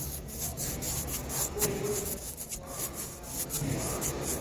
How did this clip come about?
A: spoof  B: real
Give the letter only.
B